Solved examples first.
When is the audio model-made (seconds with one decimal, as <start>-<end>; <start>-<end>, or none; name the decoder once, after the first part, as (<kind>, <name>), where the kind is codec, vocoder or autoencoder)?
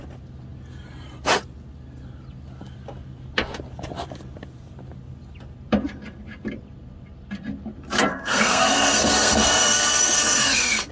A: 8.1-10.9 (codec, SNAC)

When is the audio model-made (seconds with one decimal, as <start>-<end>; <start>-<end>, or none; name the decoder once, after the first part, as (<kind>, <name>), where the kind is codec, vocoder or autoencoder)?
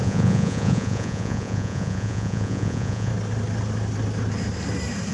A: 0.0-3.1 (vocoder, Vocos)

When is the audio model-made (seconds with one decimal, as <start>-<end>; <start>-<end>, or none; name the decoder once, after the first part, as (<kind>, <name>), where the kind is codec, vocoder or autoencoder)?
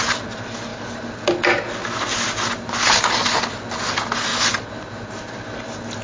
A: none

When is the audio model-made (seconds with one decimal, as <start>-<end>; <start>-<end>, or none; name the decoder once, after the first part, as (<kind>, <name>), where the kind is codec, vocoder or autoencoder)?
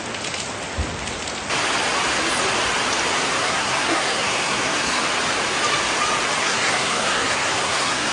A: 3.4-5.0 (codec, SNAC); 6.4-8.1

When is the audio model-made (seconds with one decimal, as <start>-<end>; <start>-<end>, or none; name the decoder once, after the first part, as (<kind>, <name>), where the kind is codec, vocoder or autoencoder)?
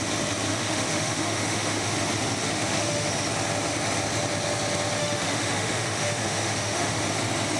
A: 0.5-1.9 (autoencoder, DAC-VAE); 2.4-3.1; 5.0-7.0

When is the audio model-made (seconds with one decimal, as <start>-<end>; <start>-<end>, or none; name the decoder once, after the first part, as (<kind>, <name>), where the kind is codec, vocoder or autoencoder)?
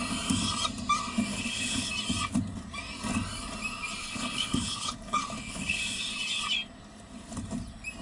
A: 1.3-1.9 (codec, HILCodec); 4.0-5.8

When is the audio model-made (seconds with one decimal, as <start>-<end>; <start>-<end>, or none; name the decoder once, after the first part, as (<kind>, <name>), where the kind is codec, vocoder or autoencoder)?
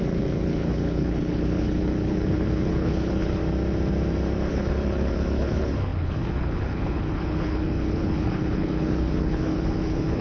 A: 0.0-3.4 (codec, HILCodec); 4.5-10.2